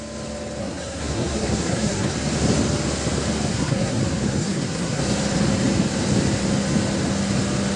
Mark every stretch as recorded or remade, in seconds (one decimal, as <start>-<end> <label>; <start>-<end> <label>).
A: 0.0-0.6 recorded; 0.6-2.1 remade; 2.1-3.5 recorded; 3.5-4.0 remade; 4.0-4.4 recorded; 4.4-5.0 remade; 5.0-7.8 recorded

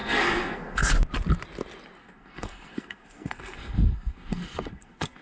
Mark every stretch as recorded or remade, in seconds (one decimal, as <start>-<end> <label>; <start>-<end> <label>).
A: 0.0-0.9 remade; 0.9-2.0 recorded; 2.0-5.2 remade

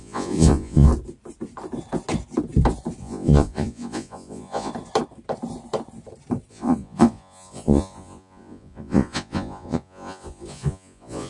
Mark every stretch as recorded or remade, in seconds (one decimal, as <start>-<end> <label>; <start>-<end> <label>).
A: 0.0-0.9 remade; 0.9-3.0 recorded; 3.0-4.7 remade; 4.7-6.5 recorded; 6.5-11.3 remade